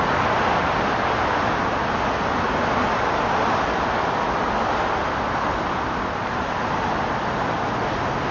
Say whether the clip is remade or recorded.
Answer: recorded